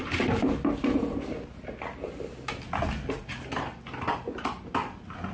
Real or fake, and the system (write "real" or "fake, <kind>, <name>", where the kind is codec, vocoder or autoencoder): real